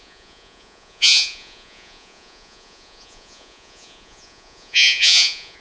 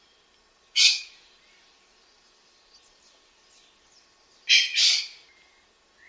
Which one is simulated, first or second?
first